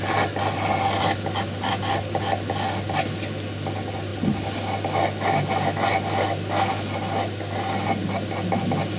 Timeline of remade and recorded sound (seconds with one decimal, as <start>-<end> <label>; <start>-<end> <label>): 0.0-9.0 recorded